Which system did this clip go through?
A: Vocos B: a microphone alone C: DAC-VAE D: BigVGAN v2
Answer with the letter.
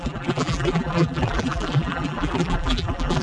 D